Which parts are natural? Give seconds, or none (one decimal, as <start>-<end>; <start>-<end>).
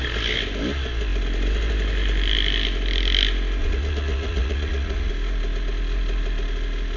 0.0-3.6; 5.1-7.0